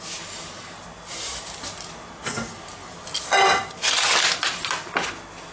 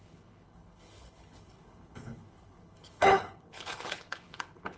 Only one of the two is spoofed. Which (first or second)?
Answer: second